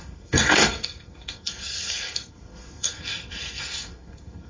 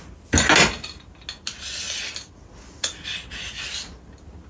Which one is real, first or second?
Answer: second